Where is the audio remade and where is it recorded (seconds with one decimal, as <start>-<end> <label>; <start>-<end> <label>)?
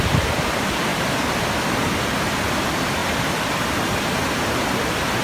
0.0-0.9 remade; 0.9-2.1 recorded; 2.1-3.0 remade; 3.0-4.0 recorded; 4.0-5.2 remade